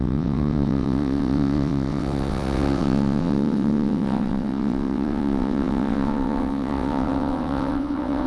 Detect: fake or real fake